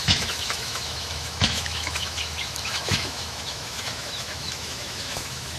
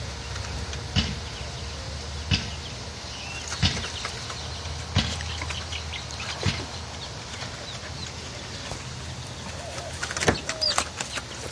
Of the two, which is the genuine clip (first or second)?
second